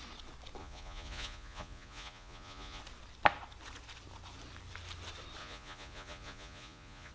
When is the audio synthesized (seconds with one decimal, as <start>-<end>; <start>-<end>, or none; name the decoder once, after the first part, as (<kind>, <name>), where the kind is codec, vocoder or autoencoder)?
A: 0.6-2.8 (vocoder, Vocos); 5.4-7.1